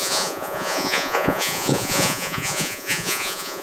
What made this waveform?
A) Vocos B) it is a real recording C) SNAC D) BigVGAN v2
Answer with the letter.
A